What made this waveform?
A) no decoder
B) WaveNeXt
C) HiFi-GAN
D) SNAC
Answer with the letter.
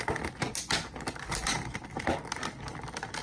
A